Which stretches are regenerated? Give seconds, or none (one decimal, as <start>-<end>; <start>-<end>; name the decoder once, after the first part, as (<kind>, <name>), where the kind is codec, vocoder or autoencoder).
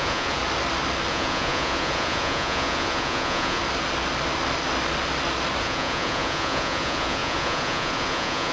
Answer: 0.0-0.4 (vocoder, Vocos); 1.1-3.6; 5.6-8.5